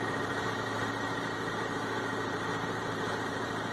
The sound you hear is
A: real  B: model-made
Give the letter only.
B